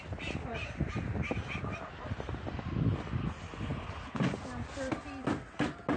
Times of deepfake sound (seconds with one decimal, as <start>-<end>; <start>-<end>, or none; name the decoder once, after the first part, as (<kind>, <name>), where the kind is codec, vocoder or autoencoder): none